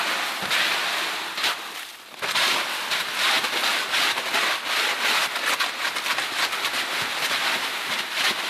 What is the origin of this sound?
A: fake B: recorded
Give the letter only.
B